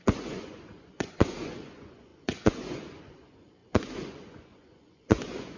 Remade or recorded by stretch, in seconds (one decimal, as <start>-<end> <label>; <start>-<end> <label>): 0.0-5.6 remade